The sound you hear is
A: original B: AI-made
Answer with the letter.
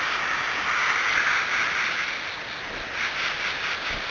A